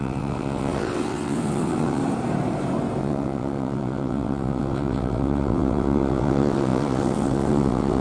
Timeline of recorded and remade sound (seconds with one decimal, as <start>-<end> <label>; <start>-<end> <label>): 0.0-2.0 remade; 2.0-3.0 recorded; 3.0-8.0 remade